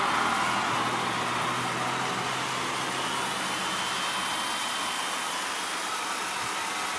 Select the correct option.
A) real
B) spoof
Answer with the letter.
A